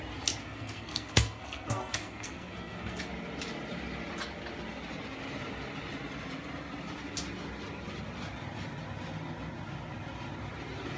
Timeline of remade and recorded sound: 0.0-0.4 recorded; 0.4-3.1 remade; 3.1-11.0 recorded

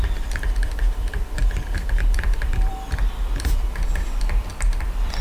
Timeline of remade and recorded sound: 0.0-5.2 remade

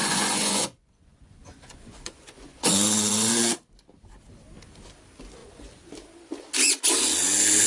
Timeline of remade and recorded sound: 0.0-3.3 remade; 3.3-5.4 recorded; 5.4-5.9 remade; 5.9-7.7 recorded

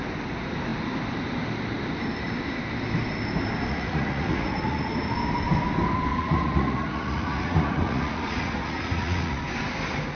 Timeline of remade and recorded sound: 0.0-3.7 recorded; 3.7-4.9 remade; 4.9-6.1 recorded; 6.1-9.4 remade; 9.4-10.1 recorded

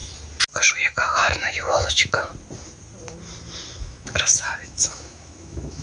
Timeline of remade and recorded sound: 0.0-0.7 recorded; 0.7-2.3 remade; 2.3-3.8 recorded; 3.8-5.8 remade

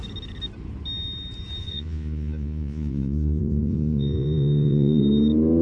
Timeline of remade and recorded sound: 0.0-1.6 recorded; 1.6-5.0 remade; 5.0-5.6 recorded

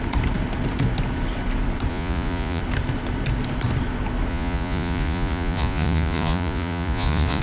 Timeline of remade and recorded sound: 0.0-1.9 recorded; 1.9-2.6 remade; 2.6-4.3 recorded; 4.3-7.4 remade

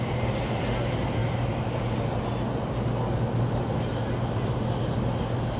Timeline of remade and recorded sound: 0.0-5.6 recorded